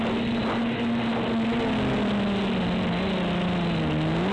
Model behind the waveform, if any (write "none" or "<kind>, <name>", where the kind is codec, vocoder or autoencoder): none